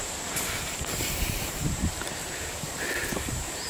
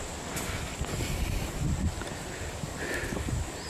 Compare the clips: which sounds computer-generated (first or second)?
first